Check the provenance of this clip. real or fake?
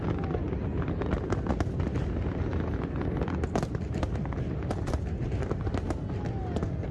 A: real